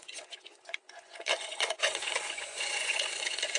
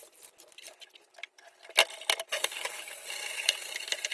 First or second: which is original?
second